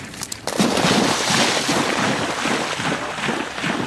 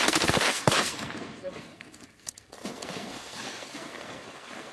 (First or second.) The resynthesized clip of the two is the second